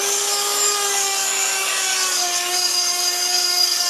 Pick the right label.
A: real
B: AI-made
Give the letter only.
B